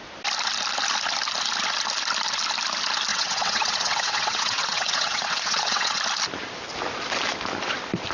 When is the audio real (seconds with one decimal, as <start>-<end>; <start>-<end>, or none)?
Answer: 0.0-3.1; 6.0-8.1

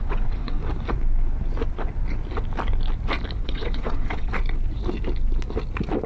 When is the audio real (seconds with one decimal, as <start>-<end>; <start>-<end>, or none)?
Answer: 0.6-3.4; 4.3-6.1

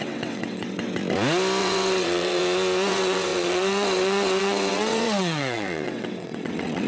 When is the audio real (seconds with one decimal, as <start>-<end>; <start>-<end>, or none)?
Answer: 1.0-1.6; 2.4-2.9